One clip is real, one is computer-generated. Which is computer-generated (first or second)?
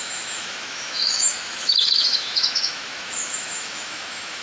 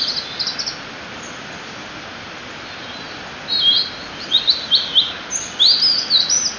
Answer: first